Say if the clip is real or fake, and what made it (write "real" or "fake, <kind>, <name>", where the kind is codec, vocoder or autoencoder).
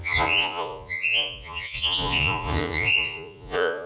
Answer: fake, vocoder, Vocos